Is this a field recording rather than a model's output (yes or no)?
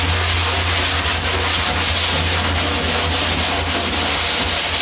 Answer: yes